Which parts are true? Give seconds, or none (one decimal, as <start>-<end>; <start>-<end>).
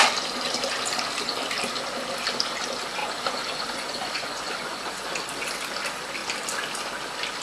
0.0-3.0; 5.1-7.4